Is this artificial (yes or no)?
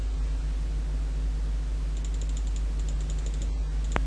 no